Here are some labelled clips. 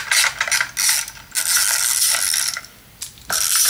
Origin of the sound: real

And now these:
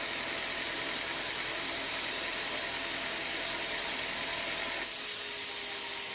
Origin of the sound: real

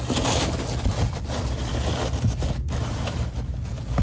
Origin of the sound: real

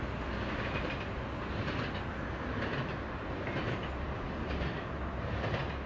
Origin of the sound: real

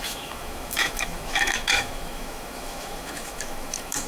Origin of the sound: fake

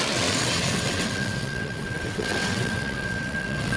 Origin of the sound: fake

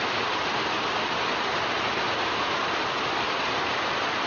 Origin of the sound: real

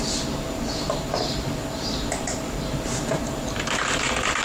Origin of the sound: fake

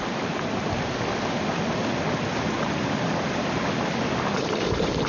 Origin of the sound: real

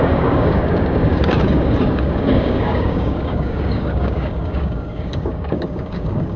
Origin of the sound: fake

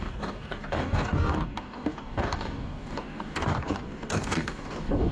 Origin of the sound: fake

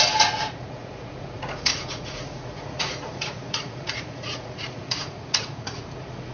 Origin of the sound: fake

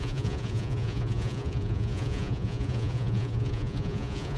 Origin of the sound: fake